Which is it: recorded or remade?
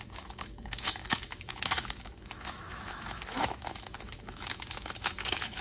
remade